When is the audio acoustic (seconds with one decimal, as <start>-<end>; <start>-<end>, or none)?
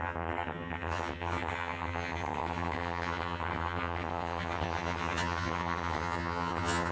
none